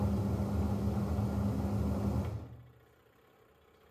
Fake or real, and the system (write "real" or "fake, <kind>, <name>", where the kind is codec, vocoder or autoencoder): real